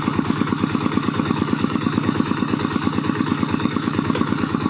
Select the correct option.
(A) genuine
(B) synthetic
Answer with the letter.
B